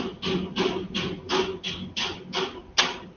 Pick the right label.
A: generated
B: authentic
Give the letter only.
B